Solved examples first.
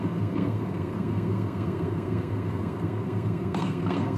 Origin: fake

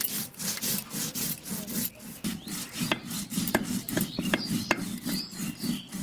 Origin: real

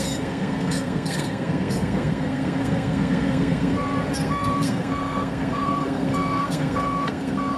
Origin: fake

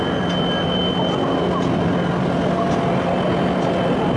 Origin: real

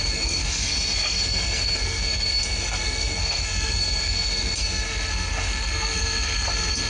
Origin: fake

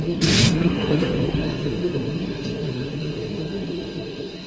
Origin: fake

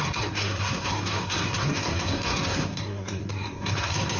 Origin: fake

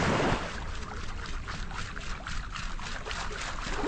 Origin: real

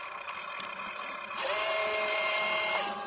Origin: real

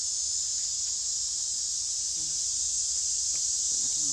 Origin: real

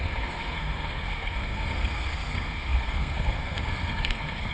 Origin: fake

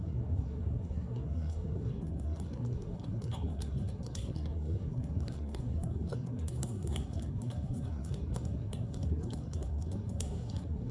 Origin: fake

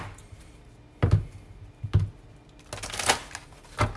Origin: real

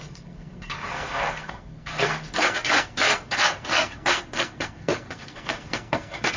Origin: fake